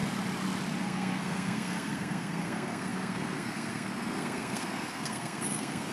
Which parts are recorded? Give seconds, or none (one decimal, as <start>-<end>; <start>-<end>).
0.0-0.8